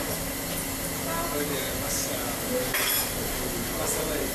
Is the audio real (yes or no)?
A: yes